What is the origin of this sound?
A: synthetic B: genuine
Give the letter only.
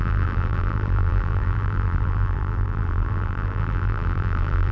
A